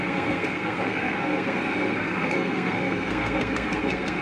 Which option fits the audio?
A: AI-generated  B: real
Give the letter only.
A